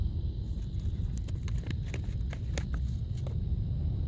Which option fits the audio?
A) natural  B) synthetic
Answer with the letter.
A